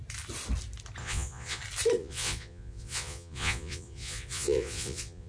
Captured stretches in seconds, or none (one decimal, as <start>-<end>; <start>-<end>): 0.0-1.0; 1.6-2.0